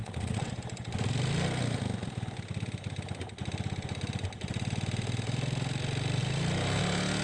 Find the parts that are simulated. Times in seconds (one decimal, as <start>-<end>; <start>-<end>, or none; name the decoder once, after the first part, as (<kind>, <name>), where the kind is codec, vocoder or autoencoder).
0.0-0.5 (vocoder, WaveNeXt)